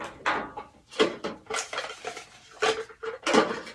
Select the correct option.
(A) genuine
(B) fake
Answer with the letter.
A